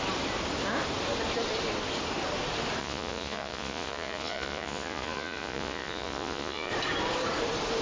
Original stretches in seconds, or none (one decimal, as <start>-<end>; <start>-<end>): 0.0-2.8; 6.7-7.8